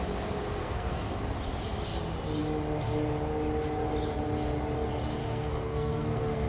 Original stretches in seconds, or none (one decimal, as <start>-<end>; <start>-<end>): 0.0-0.6; 1.1-5.2

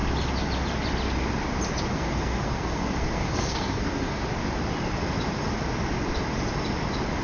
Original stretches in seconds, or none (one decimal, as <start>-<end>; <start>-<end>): 0.0-1.9; 4.2-7.2

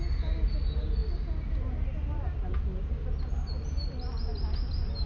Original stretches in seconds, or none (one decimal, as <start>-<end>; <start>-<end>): 0.0-5.1

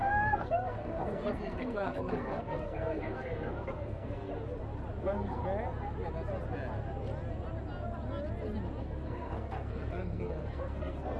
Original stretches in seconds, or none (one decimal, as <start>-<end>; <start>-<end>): 4.3-5.0; 5.4-8.8

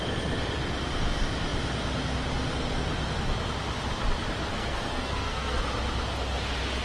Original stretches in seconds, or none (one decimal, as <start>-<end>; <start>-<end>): 0.0-4.5; 5.6-6.8

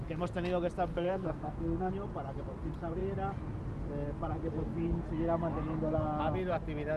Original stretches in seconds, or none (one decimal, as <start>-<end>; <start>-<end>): 0.0-0.9; 1.9-7.0

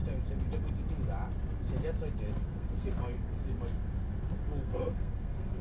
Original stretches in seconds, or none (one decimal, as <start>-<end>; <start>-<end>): 0.0-2.3; 3.0-4.6

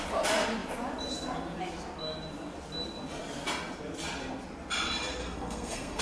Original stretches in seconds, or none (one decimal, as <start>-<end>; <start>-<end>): 0.0-5.2